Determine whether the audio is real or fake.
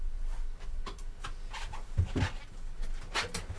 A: real